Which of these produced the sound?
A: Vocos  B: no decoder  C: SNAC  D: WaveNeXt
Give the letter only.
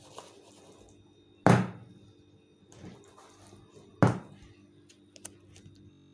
B